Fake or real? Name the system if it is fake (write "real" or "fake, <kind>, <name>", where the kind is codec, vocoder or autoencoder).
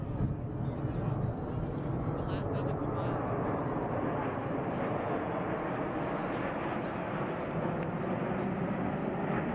real